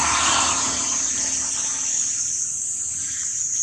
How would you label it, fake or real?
fake